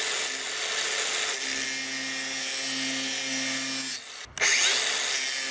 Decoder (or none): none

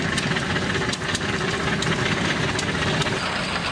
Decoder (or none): none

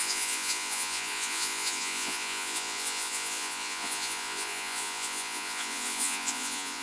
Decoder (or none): vocoder, Vocos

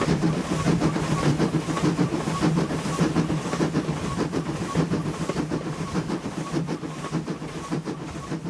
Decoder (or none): vocoder, BigVGAN v2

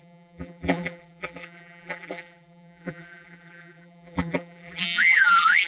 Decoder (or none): vocoder, BigVGAN v2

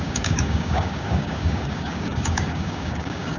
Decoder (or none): codec, DAC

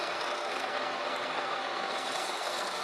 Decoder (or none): codec, SNAC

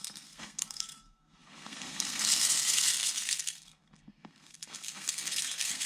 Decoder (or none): codec, SNAC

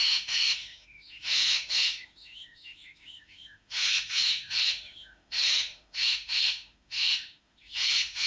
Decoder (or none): autoencoder, DAC-VAE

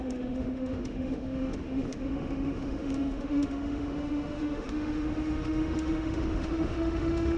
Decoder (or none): autoencoder, DAC-VAE